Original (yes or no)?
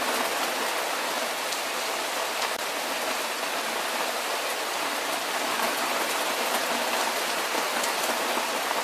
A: yes